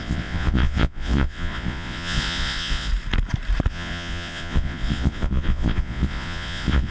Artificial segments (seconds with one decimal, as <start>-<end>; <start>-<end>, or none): 0.0-2.9; 3.7-6.9